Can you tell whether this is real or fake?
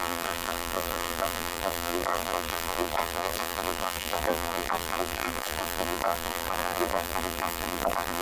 fake